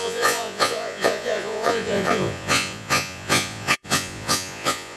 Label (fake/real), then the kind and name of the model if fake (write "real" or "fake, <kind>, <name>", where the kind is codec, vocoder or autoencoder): fake, vocoder, Vocos